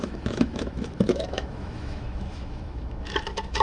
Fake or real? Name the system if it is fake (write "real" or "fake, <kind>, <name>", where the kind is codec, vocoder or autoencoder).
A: fake, autoencoder, DAC-VAE